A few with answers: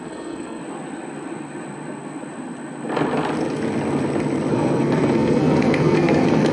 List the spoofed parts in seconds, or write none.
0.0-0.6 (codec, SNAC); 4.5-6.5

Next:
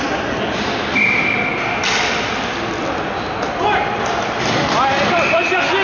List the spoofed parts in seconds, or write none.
1.8-5.0 (vocoder, BigVGAN v2)

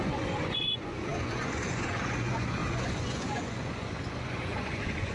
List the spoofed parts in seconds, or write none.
0.0-5.1 (vocoder, Vocos)

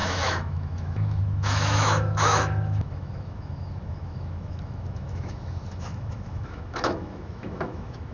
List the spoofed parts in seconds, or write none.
0.0-8.1 (autoencoder, DAC-VAE)

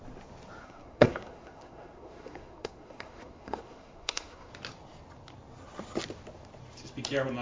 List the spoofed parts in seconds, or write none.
0.6-4.5 (codec, SNAC)

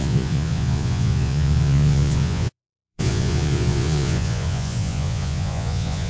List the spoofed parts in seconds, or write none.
0.0-6.1 (vocoder, Vocos)

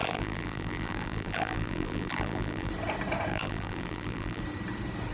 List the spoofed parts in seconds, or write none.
0.0-2.7 (vocoder, BigVGAN v2); 3.3-4.4